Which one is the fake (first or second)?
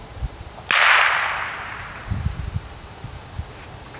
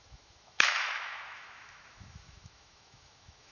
second